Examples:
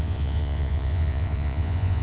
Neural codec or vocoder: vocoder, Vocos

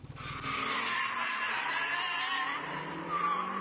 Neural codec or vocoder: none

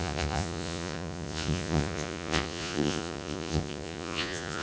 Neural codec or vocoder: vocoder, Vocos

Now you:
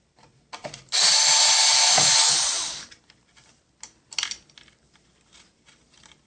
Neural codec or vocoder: none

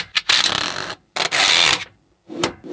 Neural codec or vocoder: none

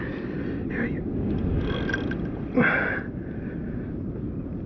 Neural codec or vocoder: none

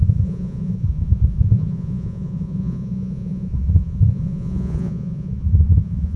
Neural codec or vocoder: vocoder, Vocos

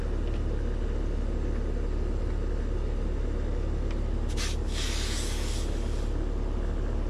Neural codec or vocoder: none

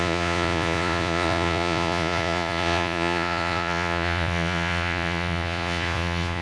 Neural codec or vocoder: vocoder, Vocos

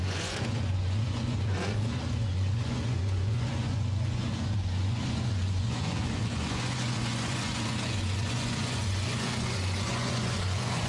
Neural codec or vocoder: vocoder, Vocos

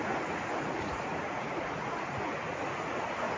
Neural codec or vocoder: vocoder, Vocos